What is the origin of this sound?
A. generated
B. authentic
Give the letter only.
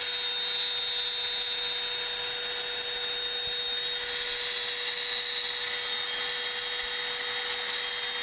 B